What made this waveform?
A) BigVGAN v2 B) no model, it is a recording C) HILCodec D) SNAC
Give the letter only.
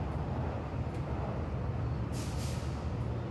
B